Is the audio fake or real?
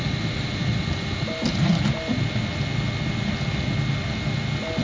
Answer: real